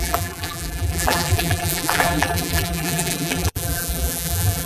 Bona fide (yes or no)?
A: no